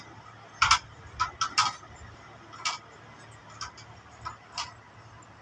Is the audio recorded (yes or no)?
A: yes